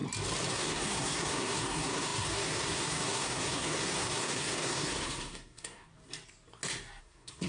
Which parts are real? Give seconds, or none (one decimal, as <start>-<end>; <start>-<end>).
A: 0.0-0.5; 5.9-7.0